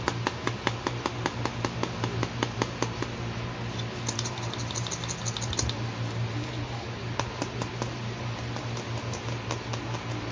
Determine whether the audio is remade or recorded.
recorded